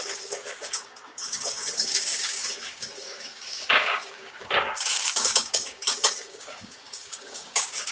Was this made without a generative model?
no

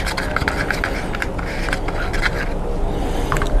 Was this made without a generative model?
yes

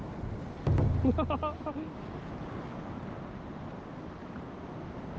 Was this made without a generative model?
yes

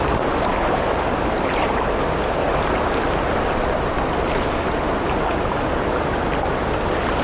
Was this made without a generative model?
yes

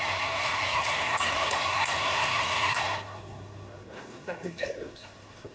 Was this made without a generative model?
no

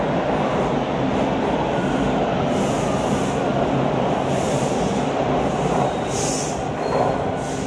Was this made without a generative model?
yes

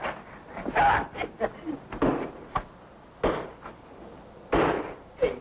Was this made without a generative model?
yes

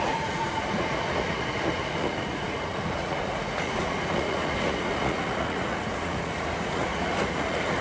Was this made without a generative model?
no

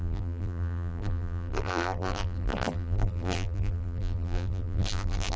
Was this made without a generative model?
no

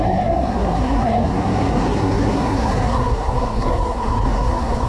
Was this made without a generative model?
no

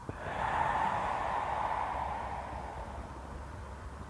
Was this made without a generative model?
yes